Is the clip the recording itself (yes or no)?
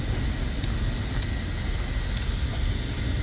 yes